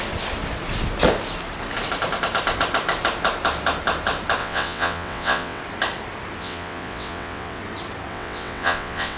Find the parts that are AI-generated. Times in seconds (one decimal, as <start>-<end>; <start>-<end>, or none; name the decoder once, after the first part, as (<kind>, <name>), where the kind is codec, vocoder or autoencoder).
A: 4.4-5.6 (vocoder, WaveNeXt); 6.4-7.6; 8.1-9.2